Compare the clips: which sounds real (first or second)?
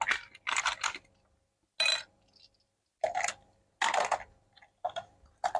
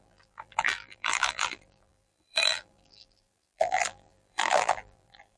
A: first